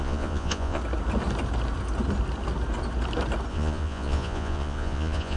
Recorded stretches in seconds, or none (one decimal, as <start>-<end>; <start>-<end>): 0.8-3.5